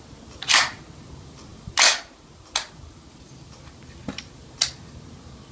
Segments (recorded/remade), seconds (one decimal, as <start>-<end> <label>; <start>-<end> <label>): 0.0-5.5 recorded